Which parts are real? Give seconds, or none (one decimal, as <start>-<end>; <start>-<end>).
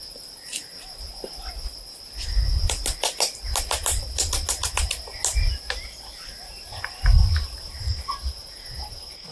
0.0-5.3; 7.0-9.3